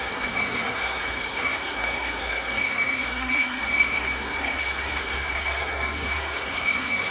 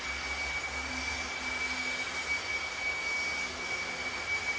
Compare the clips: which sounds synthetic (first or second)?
first